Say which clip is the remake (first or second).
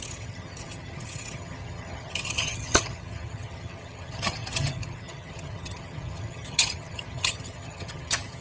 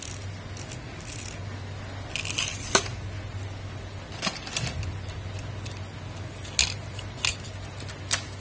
first